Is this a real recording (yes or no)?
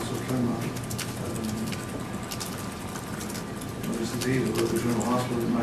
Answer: yes